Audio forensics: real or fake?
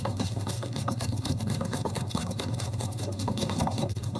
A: fake